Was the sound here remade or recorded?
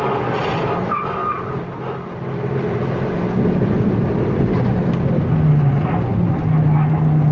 recorded